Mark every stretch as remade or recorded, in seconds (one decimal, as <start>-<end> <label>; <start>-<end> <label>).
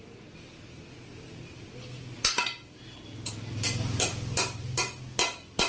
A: 0.0-5.7 recorded